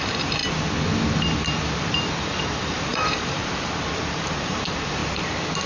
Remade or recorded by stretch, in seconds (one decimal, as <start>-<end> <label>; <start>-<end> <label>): 0.0-0.4 remade; 0.4-2.2 recorded; 2.2-3.4 remade; 3.4-4.0 recorded; 4.0-5.0 remade; 5.0-5.7 recorded